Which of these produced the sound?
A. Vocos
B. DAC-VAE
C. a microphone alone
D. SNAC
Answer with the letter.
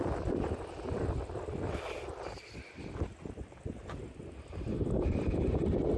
C